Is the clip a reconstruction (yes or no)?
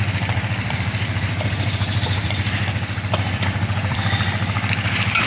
yes